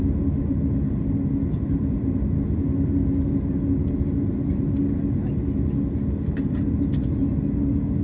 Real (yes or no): yes